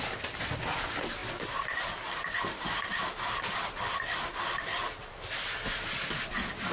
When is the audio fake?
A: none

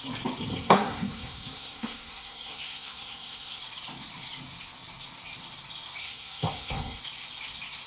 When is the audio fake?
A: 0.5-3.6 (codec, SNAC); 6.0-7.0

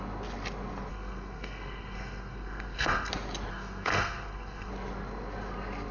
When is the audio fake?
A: 0.9-3.1 (codec, SNAC); 3.5-4.7

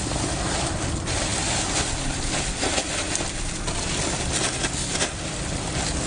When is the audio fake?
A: none

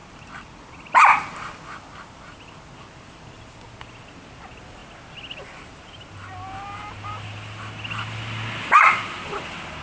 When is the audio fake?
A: none

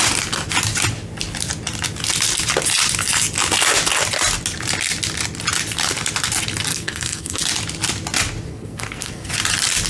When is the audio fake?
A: 6.7-7.4 (codec, SNAC); 8.5-9.3

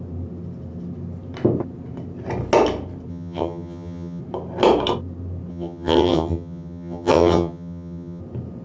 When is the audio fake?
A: 3.1-4.2 (vocoder, HiFi-GAN); 5.5-8.2